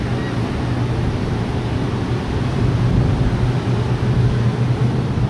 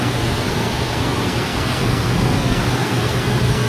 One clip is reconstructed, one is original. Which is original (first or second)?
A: first